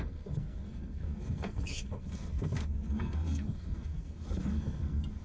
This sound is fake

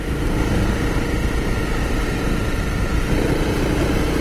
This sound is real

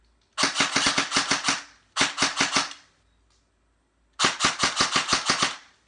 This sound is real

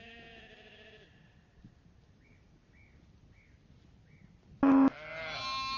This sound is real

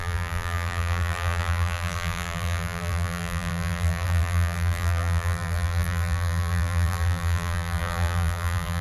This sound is fake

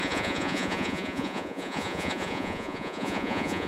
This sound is fake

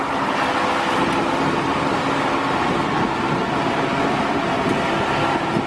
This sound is real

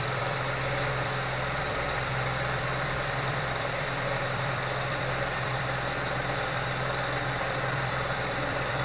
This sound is fake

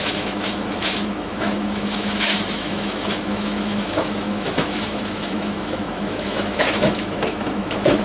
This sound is fake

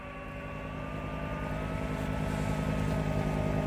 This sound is real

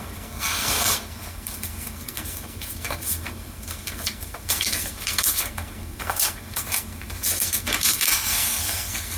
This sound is fake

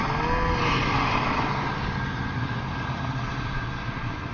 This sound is real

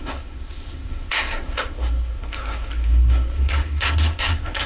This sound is fake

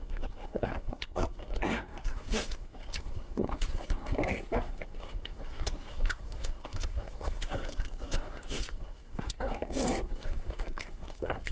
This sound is fake